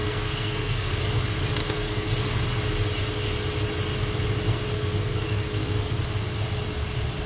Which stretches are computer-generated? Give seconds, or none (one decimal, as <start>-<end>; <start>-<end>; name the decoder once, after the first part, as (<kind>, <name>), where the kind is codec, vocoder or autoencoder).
0.0-1.2 (codec, SNAC); 1.6-2.1; 4.5-6.0